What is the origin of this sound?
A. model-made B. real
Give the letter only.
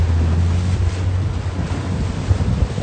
B